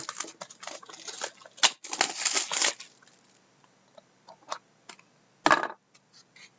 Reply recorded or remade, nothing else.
recorded